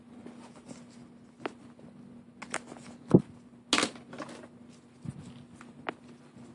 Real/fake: real